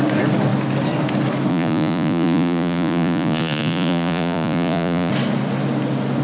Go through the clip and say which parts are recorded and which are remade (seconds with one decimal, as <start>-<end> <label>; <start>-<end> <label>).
0.0-1.5 recorded; 1.5-5.1 remade; 5.1-6.2 recorded